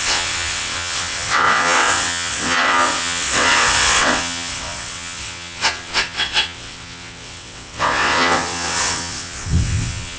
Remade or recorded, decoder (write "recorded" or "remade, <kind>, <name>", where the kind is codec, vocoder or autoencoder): remade, vocoder, WaveNeXt